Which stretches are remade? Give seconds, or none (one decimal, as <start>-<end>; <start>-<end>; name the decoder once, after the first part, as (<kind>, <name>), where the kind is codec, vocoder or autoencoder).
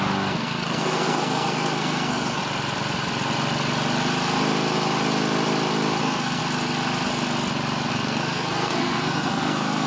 0.0-2.4 (codec, SNAC); 6.0-6.4; 7.9-9.9